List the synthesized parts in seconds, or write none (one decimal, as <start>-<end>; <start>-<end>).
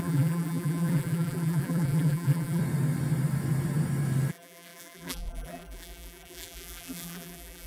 0.0-2.6; 4.3-7.7